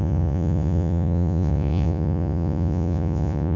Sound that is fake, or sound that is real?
fake